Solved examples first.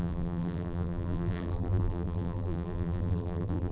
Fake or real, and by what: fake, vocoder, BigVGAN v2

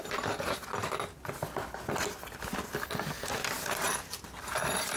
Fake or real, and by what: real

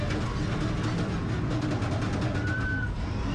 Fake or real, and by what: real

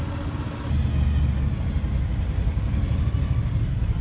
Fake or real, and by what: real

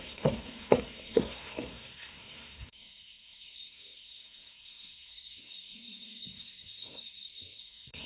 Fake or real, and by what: fake, codec, SNAC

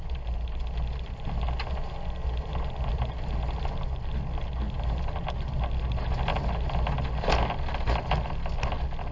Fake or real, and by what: real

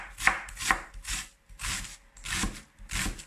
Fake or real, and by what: real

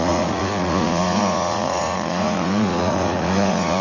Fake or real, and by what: fake, vocoder, Vocos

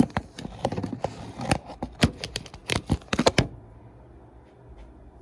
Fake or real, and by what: real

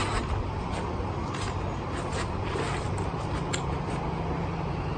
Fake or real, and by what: real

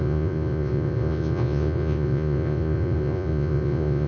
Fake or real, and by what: fake, vocoder, Vocos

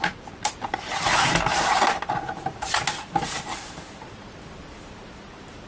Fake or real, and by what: real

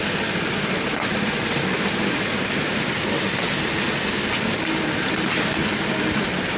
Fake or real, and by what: real